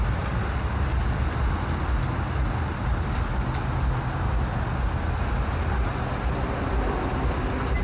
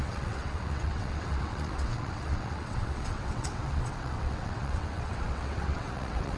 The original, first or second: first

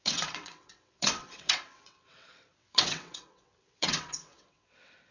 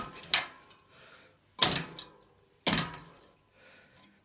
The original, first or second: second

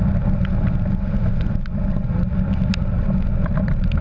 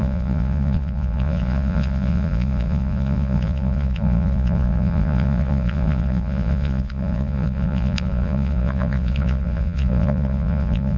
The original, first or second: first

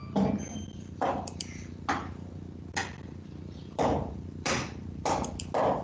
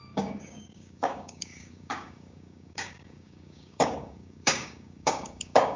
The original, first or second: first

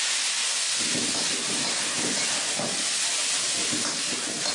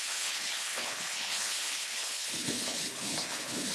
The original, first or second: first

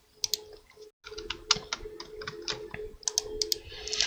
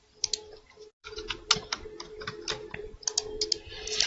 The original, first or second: first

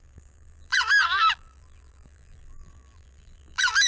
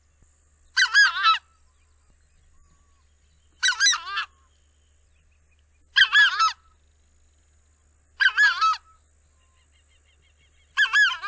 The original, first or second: second